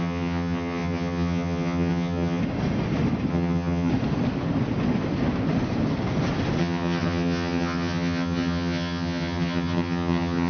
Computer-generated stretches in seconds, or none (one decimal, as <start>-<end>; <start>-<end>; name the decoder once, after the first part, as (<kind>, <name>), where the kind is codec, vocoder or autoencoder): 0.0-2.4 (vocoder, HiFi-GAN); 3.3-3.9; 6.6-10.5